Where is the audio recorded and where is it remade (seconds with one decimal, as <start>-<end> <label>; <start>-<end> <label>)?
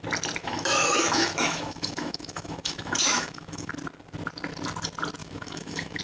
0.0-0.4 recorded; 0.4-3.7 remade; 3.7-5.2 recorded; 5.2-6.0 remade